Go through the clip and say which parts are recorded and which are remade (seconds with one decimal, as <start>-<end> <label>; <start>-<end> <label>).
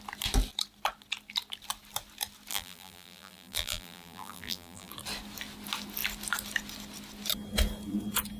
0.0-2.5 recorded; 2.5-4.9 remade; 4.9-8.4 recorded